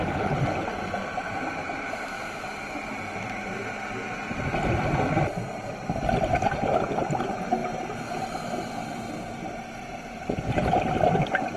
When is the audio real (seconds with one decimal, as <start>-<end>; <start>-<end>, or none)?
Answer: 1.6-4.5